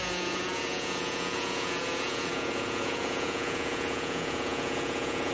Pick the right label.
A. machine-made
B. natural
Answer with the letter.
A